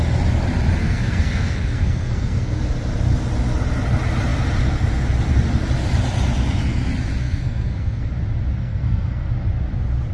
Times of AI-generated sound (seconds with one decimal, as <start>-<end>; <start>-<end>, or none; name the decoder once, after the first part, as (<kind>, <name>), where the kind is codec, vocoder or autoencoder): 0.8-2.6 (codec, SNAC); 7.2-8.1; 8.6-9.3